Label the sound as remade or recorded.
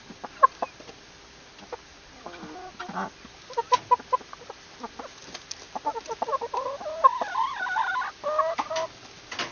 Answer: recorded